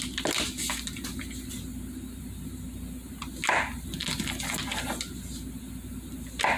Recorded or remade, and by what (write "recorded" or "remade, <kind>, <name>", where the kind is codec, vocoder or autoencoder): recorded